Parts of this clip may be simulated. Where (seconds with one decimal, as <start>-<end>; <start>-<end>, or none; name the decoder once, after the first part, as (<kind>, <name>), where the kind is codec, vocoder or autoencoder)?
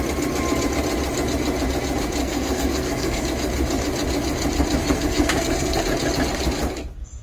2.2-3.2 (codec, SNAC); 4.8-5.8